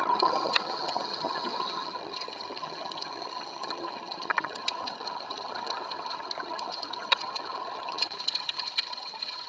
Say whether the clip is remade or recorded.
remade